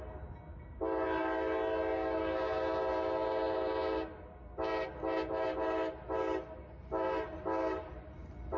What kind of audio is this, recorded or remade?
recorded